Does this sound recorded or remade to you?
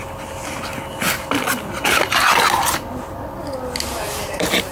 recorded